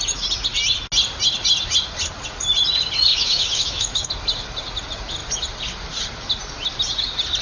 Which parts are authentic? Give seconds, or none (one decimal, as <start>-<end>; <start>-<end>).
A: 0.0-3.1; 4.1-7.4